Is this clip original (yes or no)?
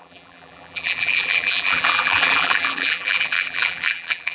no